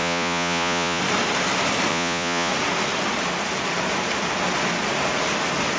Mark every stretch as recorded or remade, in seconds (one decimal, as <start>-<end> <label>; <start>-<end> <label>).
0.0-1.0 remade; 1.0-1.9 recorded; 1.9-2.5 remade; 2.5-5.8 recorded